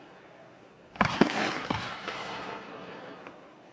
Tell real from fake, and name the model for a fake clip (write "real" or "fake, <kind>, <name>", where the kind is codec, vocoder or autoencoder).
fake, codec, SNAC